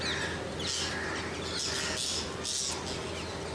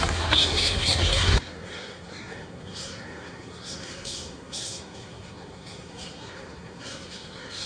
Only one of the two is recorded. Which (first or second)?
first